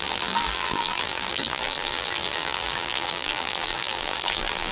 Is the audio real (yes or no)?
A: no